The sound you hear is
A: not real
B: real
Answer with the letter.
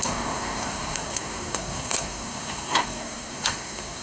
A